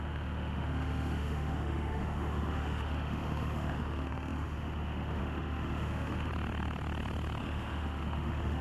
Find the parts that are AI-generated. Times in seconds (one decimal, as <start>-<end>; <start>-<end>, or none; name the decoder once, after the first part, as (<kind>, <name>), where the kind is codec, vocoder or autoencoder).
0.0-6.3 (autoencoder, DAC-VAE); 7.4-8.6